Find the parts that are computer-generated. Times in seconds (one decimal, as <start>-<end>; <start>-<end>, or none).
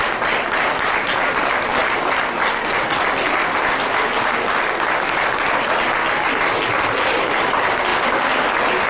none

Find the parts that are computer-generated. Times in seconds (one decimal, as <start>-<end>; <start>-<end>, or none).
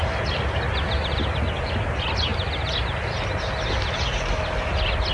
none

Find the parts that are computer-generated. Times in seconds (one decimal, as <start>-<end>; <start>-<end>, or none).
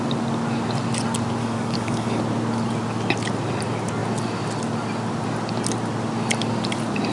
1.4-2.2